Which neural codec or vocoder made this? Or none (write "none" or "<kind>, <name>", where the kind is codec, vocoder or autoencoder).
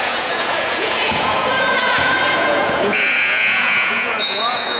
vocoder, Vocos